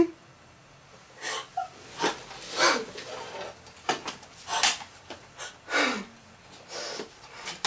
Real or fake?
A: real